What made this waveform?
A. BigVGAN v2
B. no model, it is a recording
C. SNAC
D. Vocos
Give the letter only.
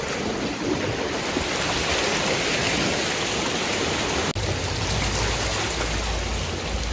B